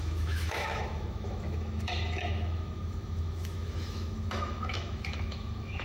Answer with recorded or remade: remade